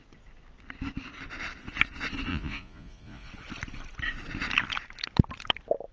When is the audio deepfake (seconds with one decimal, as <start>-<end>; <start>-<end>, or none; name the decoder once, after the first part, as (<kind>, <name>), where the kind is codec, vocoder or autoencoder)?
2.3-3.3 (vocoder, Vocos)